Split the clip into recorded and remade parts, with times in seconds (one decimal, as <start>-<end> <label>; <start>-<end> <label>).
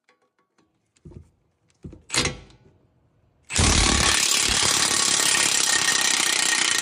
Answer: 0.0-6.8 recorded